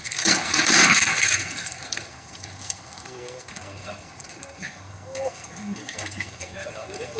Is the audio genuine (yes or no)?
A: no